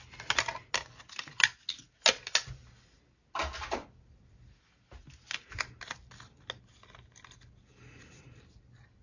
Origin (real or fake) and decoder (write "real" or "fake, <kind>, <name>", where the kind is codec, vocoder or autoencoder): real